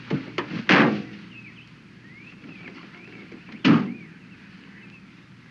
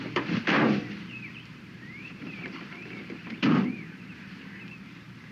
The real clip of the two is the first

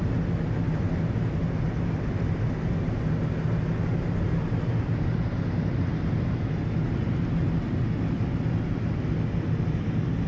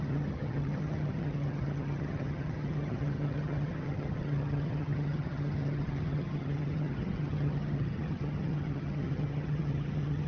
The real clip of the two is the first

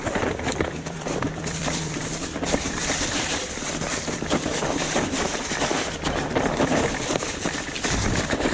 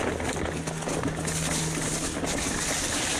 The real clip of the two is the second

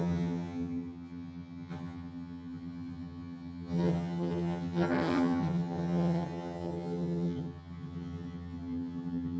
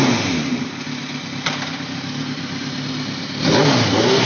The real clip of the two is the second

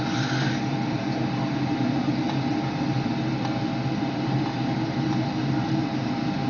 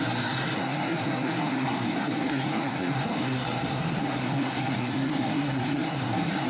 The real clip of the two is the first